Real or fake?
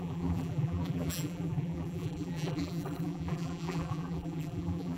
fake